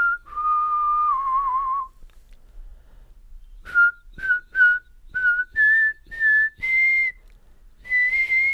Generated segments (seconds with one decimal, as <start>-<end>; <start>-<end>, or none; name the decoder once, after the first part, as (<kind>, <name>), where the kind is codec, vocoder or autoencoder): 1.1-1.8 (vocoder, BigVGAN v2)

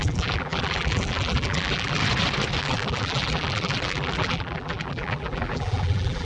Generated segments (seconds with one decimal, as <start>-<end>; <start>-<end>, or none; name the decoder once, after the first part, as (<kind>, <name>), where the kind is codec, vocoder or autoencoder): 0.0-2.0 (vocoder, BigVGAN v2); 2.6-6.2

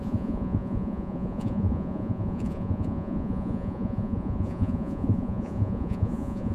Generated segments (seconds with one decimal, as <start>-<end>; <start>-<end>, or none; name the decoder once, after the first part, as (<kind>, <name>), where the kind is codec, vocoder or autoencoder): 0.0-6.5 (vocoder, Vocos)

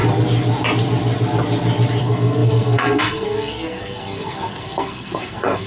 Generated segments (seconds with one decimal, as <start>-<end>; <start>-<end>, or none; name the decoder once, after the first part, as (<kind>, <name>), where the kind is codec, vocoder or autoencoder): 2.0-5.7 (codec, SNAC)

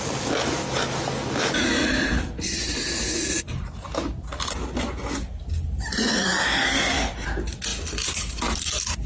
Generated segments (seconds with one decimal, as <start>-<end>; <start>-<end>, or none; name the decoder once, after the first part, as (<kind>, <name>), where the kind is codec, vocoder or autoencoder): none

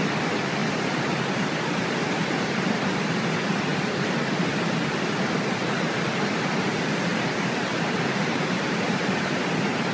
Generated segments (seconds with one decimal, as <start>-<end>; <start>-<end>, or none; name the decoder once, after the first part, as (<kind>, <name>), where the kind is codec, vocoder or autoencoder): 0.6-1.2 (vocoder, BigVGAN v2); 7.1-9.4